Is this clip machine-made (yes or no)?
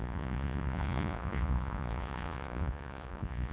yes